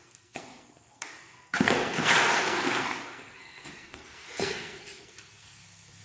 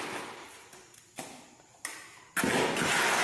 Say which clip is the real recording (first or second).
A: second